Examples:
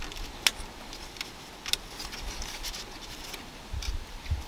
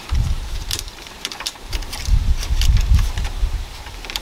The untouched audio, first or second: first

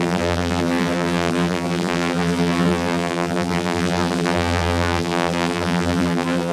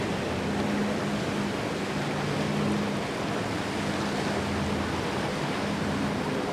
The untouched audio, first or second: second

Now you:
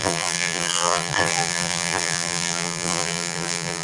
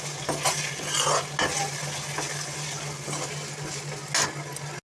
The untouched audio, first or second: second